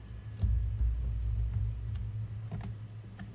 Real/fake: real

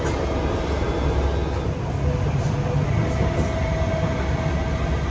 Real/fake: real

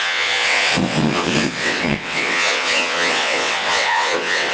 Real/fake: fake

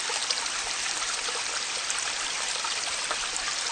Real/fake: real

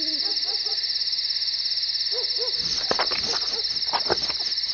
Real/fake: real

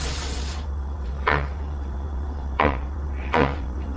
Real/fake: fake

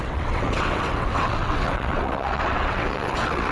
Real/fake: fake